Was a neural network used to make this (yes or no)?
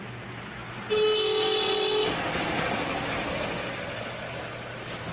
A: no